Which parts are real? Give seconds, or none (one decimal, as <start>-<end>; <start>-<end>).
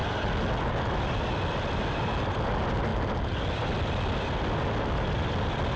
0.0-5.8